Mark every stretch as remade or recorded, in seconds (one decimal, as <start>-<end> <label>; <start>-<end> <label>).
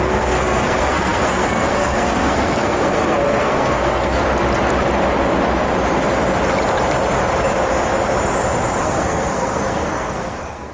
0.0-4.2 remade; 4.2-8.8 recorded; 8.8-10.7 remade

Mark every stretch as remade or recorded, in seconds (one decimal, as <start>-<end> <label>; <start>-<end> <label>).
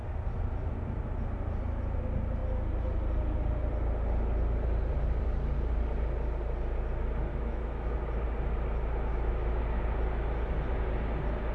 0.0-7.3 recorded; 7.3-7.9 remade; 7.9-9.1 recorded; 9.1-9.6 remade; 9.6-11.5 recorded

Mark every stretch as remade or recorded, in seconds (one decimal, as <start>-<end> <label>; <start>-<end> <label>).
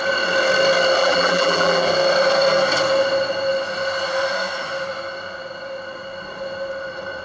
0.0-1.0 recorded; 1.0-1.9 remade; 1.9-7.2 recorded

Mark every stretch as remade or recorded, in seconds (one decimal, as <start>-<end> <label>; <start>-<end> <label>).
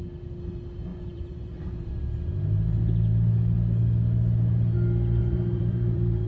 0.0-0.9 recorded; 0.9-1.9 remade; 1.9-5.2 recorded; 5.2-6.3 remade